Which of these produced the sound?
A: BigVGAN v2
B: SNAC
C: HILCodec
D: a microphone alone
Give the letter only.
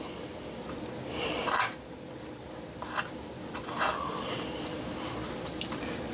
D